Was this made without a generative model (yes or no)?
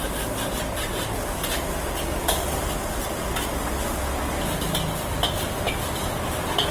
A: yes